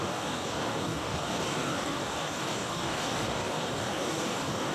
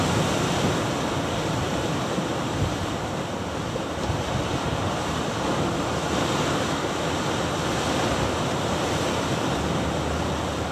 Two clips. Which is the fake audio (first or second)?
first